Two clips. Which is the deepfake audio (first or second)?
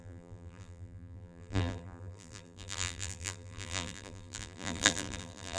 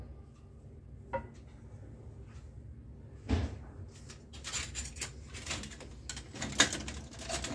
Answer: first